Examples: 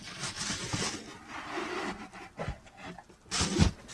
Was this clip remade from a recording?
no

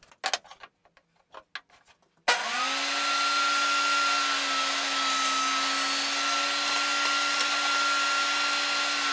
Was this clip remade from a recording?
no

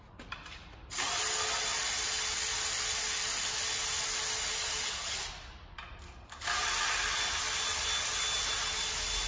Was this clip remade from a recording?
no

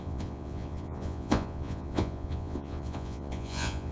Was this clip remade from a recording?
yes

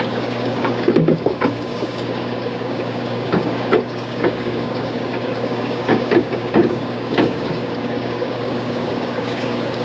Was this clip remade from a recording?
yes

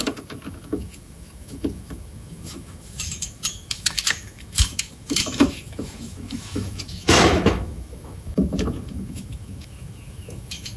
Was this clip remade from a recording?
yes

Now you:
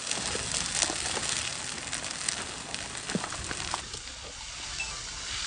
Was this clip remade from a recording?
no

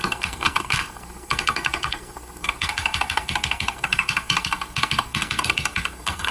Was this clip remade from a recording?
yes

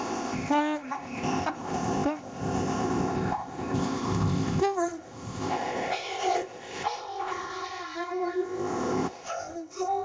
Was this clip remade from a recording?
yes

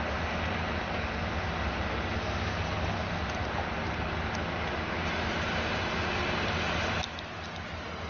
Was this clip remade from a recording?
no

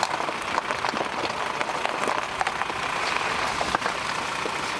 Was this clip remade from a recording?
no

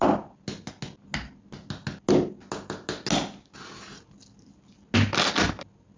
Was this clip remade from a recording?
no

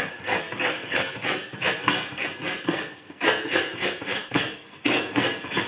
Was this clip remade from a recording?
yes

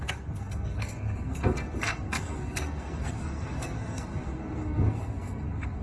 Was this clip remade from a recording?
yes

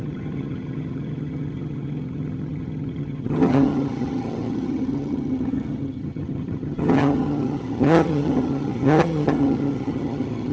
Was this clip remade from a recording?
yes